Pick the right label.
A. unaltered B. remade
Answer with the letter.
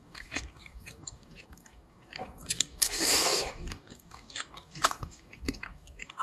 B